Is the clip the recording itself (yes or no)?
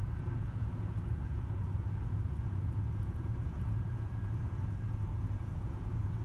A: no